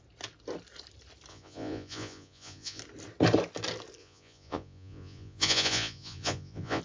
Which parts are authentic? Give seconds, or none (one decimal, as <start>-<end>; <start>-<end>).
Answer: 0.0-1.3; 2.8-4.0